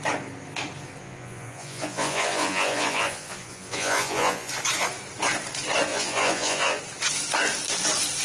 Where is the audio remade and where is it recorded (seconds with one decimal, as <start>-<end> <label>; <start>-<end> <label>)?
0.0-1.0 recorded; 1.0-4.5 remade; 4.5-5.9 recorded; 5.9-6.8 remade; 6.8-8.2 recorded